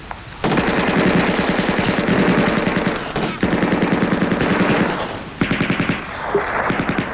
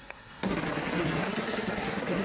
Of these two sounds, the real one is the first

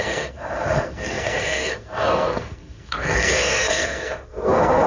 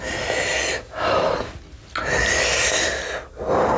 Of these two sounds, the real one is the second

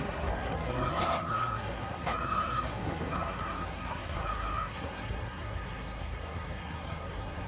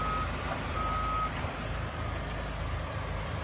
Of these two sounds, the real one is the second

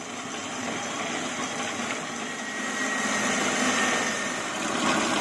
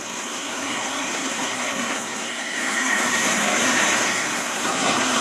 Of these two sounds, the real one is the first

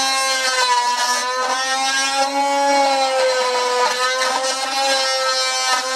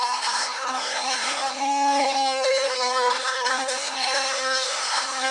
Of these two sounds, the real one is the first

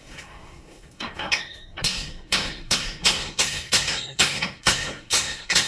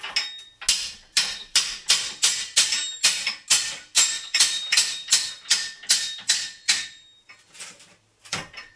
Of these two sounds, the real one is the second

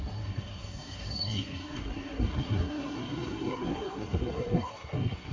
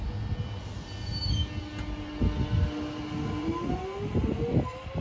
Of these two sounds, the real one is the second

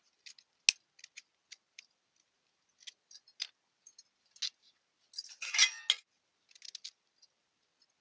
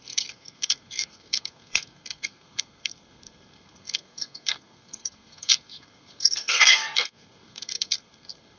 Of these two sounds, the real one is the first